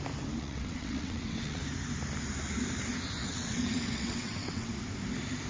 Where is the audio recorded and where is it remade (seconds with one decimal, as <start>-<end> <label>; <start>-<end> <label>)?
0.0-0.4 recorded; 0.4-1.6 remade; 1.6-3.2 recorded; 3.2-4.7 remade; 4.7-5.5 recorded